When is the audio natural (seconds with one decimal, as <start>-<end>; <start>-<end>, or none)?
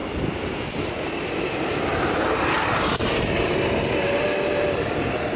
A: 0.8-5.4